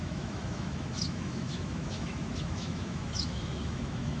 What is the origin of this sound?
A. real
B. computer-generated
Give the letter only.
B